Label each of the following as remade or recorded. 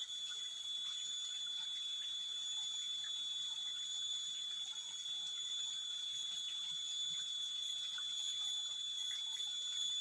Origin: remade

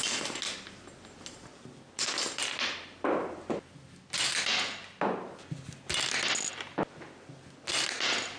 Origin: recorded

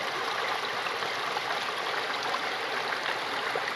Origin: recorded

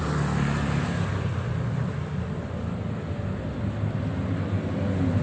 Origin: recorded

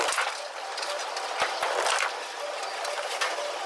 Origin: recorded